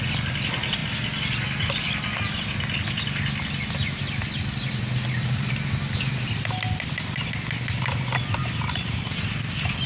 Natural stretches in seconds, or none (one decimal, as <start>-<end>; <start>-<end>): 0.0-9.9